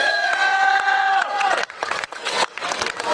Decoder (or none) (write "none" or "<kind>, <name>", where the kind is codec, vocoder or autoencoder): vocoder, WaveNeXt